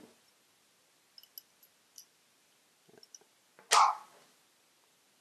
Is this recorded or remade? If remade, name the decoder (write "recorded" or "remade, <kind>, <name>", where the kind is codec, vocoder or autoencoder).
recorded